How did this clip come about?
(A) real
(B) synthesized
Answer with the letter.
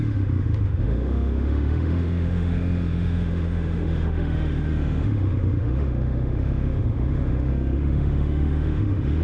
B